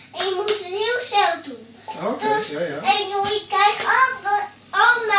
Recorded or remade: recorded